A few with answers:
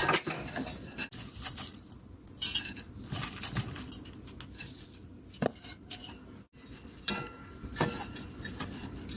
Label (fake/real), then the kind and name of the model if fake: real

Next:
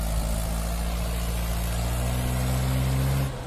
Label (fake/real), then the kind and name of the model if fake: real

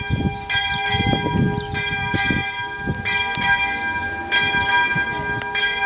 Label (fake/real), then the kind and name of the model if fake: real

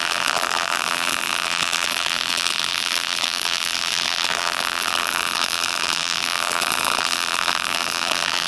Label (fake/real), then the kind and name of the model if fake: fake, vocoder, BigVGAN v2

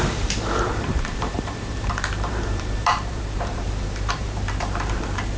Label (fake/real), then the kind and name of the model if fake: fake, vocoder, BigVGAN v2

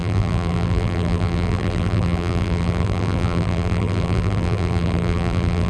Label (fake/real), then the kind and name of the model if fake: fake, vocoder, BigVGAN v2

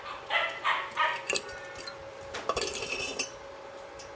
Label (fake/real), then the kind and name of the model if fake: fake, vocoder, BigVGAN v2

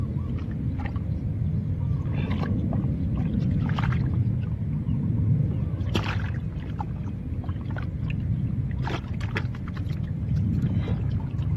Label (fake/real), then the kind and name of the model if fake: real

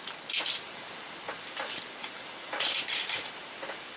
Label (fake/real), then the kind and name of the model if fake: fake, vocoder, BigVGAN v2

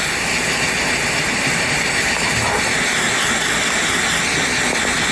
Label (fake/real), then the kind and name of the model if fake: real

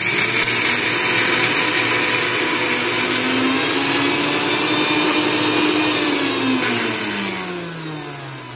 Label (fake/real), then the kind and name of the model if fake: real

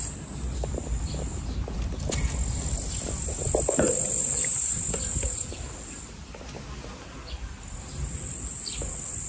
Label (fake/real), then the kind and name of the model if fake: real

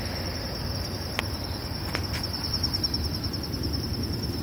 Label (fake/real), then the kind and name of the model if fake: fake, vocoder, BigVGAN v2